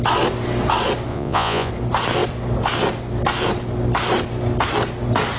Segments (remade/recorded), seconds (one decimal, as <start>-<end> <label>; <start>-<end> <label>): 0.0-1.1 recorded; 1.1-1.7 remade; 1.7-5.4 recorded

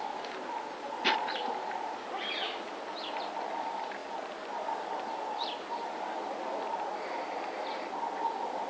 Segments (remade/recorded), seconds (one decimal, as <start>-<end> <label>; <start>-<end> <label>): 0.0-8.7 recorded

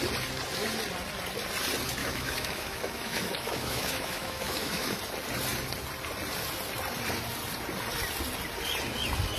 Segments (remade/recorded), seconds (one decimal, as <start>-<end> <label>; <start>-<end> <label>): 0.0-2.0 recorded; 2.0-5.0 remade; 5.0-9.4 recorded

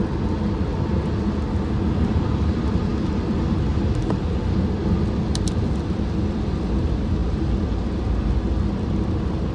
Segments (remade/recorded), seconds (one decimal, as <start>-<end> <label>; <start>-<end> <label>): 0.0-7.2 recorded; 7.2-8.3 remade; 8.3-9.5 recorded

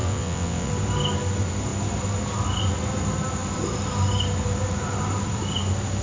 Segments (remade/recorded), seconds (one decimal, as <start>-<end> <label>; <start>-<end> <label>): 0.0-0.7 remade; 0.7-6.0 recorded

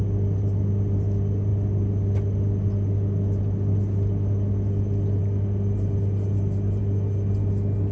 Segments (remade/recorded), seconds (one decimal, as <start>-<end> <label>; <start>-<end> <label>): 0.0-7.9 recorded

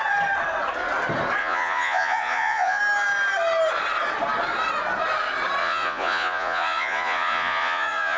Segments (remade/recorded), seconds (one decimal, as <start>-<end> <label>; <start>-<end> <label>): 0.0-1.4 recorded; 1.4-2.8 remade; 2.8-5.6 recorded; 5.6-8.2 remade

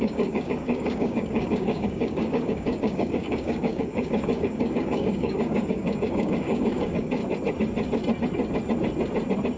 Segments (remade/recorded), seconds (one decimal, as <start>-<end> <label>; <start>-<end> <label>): 0.0-7.2 remade; 7.2-9.6 recorded